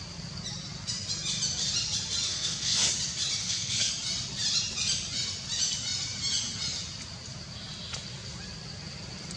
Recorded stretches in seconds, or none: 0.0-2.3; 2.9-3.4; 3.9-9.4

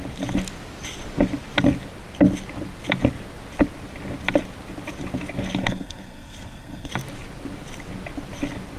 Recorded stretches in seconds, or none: 0.0-5.6; 6.9-8.8

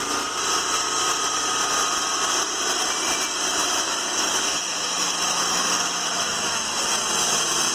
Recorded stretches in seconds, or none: 0.0-3.6; 6.9-7.7

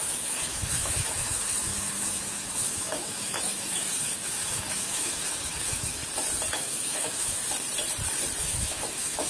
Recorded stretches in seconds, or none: 6.0-6.5; 7.4-8.4

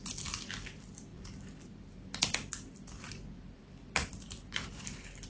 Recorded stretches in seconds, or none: none